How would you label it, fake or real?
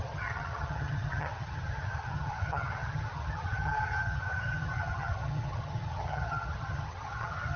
fake